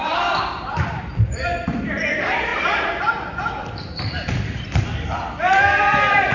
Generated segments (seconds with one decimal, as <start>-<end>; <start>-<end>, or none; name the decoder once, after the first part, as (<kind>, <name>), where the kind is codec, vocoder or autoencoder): 0.0-6.3 (vocoder, BigVGAN v2)